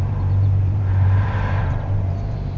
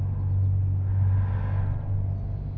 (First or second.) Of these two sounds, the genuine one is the second